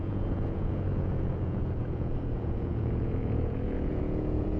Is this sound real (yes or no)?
no